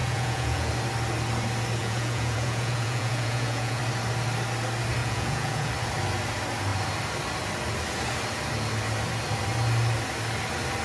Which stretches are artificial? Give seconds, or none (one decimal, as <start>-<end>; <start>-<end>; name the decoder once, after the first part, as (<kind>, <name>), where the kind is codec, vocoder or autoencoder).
0.0-0.7 (vocoder, Vocos); 1.8-3.8; 5.0-5.7